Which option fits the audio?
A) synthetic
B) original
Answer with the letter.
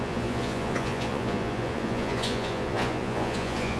A